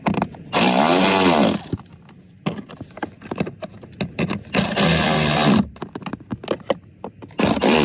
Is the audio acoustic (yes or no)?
yes